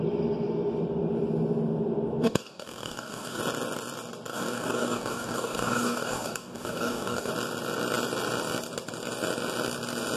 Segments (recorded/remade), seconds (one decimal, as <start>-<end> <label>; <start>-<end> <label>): 0.0-2.2 recorded; 2.2-3.4 remade; 3.4-4.3 recorded; 4.3-7.3 remade; 7.3-10.2 recorded